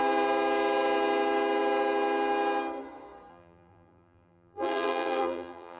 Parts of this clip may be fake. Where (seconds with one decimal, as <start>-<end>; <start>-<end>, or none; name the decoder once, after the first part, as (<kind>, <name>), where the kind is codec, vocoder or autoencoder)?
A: 3.3-5.8 (vocoder, BigVGAN v2)